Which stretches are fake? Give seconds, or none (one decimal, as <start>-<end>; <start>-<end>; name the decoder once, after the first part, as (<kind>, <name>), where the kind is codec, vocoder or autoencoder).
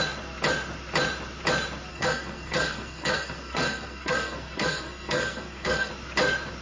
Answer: 1.9-5.9 (codec, SNAC)